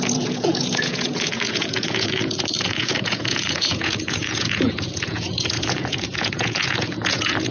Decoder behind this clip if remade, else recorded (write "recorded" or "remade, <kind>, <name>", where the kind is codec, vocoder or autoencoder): remade, vocoder, Vocos